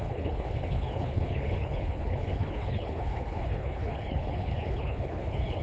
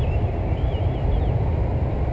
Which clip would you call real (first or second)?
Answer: second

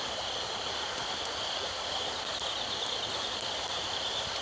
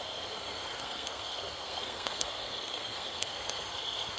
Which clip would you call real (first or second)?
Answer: first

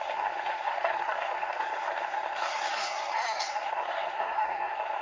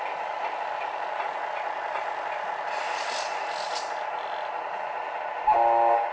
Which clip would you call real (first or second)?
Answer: second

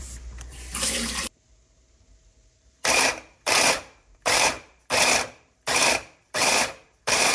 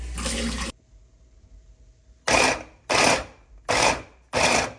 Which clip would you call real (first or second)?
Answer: second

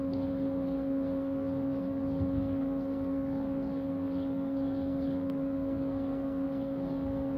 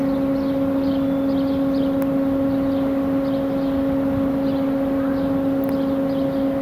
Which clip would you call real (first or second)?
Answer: second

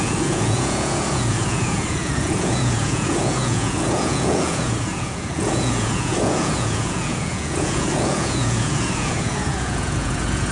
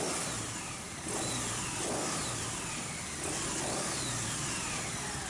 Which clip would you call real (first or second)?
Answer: second